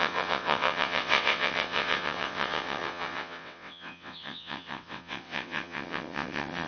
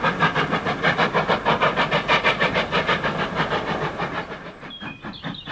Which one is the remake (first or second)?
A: first